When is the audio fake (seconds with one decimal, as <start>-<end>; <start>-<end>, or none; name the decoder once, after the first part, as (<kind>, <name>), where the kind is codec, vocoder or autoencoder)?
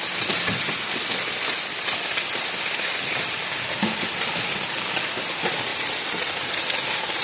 none